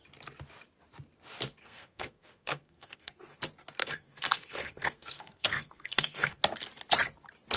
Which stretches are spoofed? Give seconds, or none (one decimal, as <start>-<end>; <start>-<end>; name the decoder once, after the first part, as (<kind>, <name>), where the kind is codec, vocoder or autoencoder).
1.6-3.4 (codec, SNAC); 3.8-6.4